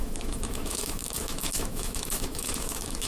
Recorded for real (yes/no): no